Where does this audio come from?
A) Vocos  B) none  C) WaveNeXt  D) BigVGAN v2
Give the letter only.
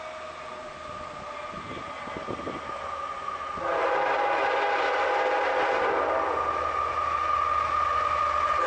B